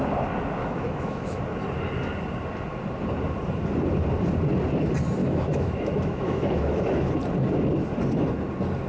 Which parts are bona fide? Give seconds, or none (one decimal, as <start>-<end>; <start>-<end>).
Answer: 0.0-0.6; 1.4-5.2; 7.1-8.9